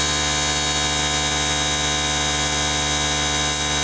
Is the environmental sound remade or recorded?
recorded